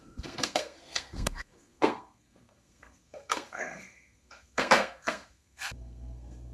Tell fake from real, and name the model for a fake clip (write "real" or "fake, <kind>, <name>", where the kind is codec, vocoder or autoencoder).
fake, codec, SNAC